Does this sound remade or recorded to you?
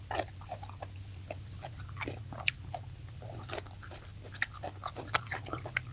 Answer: recorded